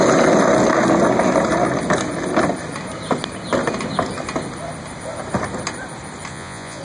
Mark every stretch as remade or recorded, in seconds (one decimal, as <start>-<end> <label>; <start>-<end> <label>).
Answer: 0.0-6.3 recorded; 6.3-6.8 remade

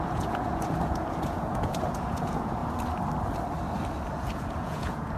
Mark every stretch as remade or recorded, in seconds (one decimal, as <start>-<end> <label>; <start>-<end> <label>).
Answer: 0.0-2.6 remade; 2.6-4.1 recorded; 4.1-5.2 remade